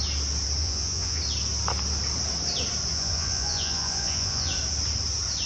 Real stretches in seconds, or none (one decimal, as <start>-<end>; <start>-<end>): 0.0-0.6; 1.2-2.9; 4.5-5.5